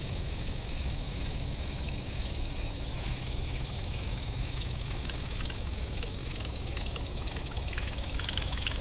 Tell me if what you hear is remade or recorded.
remade